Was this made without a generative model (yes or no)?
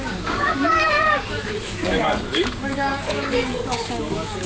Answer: no